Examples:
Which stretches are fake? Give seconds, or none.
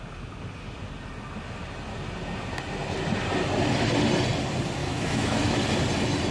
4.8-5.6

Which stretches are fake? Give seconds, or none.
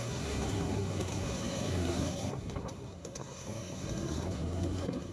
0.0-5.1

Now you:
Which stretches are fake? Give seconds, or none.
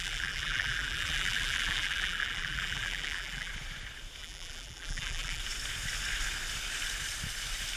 0.0-3.5; 4.2-5.4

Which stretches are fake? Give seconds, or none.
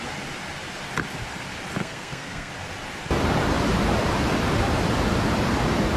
1.8-2.5